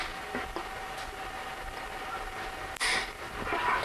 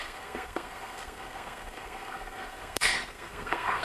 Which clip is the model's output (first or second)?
second